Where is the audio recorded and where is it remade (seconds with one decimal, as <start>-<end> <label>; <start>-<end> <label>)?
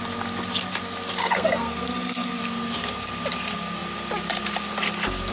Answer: 0.0-1.2 recorded; 1.2-2.4 remade; 2.4-5.3 recorded